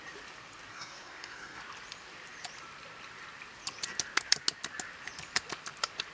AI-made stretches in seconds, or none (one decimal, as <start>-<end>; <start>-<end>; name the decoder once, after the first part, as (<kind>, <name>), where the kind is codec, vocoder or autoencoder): 0.7-1.6 (codec, SNAC)